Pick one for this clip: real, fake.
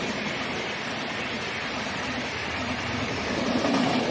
fake